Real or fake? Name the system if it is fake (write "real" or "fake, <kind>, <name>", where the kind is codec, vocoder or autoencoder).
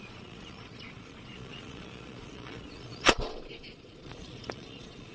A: fake, vocoder, Vocos